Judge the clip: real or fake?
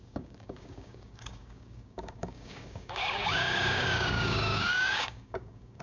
fake